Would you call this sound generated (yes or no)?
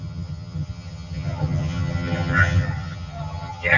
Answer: yes